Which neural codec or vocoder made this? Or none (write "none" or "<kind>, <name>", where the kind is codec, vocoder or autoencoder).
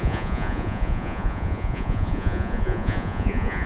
vocoder, Vocos